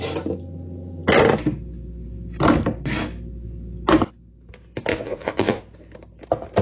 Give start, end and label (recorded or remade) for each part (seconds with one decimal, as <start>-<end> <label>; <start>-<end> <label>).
0.0-4.9 recorded; 4.9-5.6 remade; 5.6-6.6 recorded